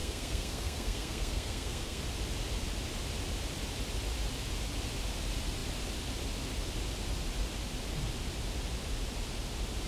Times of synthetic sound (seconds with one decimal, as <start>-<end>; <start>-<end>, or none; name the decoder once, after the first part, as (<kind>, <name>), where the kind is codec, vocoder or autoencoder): 0.0-2.0 (codec, SNAC)